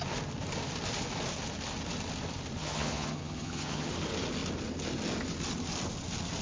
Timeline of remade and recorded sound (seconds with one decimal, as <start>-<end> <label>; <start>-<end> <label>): 0.0-2.6 recorded; 2.6-3.9 remade; 3.9-6.4 recorded